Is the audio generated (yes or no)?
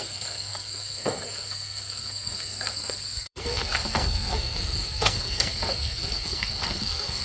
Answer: yes